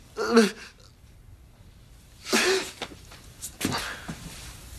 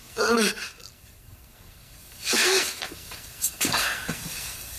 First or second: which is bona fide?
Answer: first